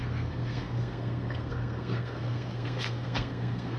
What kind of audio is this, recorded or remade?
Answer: remade